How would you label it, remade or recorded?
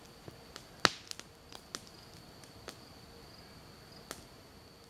recorded